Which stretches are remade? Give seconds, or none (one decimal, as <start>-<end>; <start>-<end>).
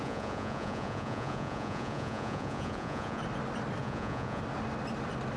0.0-3.2; 3.8-4.4